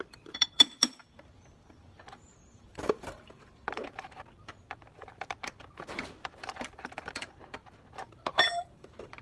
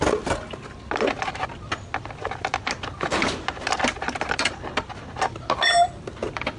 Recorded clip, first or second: second